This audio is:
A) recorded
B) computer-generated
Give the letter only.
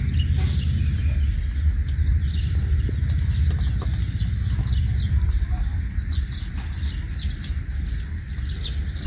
A